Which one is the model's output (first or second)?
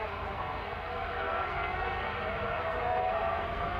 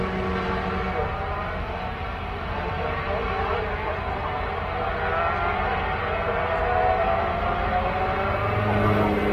first